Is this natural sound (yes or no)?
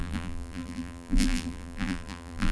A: no